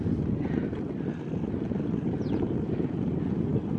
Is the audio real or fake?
real